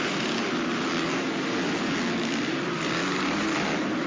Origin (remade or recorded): recorded